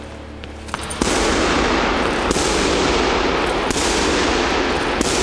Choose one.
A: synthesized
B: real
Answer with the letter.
B